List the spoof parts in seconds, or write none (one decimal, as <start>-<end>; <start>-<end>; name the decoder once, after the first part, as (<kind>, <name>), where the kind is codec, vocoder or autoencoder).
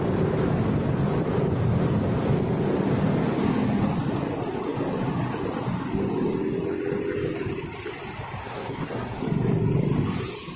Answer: 8.4-9.2 (codec, SNAC)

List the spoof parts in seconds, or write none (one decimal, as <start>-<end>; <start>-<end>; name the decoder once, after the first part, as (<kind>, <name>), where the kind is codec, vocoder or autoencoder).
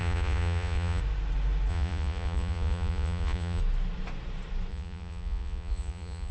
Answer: 0.0-1.0 (vocoder, Vocos); 1.7-3.6; 4.7-6.3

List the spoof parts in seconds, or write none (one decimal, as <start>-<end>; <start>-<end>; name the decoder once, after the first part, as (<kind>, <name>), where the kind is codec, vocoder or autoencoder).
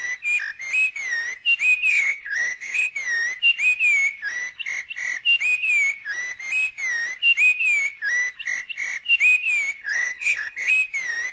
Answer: 1.9-2.9 (codec, HILCodec); 9.8-10.7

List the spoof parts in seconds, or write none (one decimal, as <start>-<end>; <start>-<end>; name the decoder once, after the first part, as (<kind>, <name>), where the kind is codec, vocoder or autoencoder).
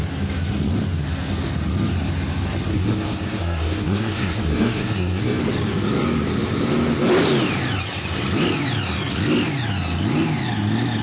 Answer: 2.7-5.4 (codec, SNAC)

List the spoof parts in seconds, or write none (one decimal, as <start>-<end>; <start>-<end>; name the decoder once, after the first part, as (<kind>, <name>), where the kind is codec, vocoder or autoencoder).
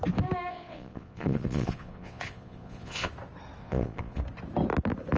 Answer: 0.5-3.1 (vocoder, Vocos); 3.6-4.2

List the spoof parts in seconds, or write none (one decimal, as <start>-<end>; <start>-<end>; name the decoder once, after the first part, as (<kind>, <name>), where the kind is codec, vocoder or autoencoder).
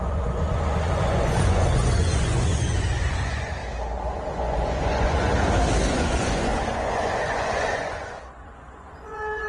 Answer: 0.0-3.6 (vocoder, Vocos); 4.3-5.3; 5.9-9.5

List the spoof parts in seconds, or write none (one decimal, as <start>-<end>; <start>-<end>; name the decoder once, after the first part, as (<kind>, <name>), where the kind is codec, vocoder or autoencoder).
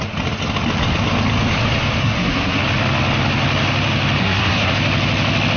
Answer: 2.0-2.6 (codec, SNAC); 4.2-4.7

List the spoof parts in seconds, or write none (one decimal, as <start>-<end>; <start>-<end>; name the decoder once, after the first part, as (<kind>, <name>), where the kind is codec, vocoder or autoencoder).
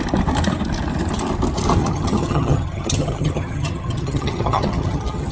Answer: 1.8-5.3 (vocoder, HiFi-GAN)